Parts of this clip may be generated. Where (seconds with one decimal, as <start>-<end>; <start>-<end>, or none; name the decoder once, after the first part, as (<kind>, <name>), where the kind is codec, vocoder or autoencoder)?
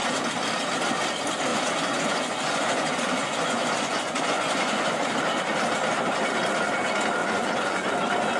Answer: 1.5-5.1 (vocoder, Vocos); 7.2-7.9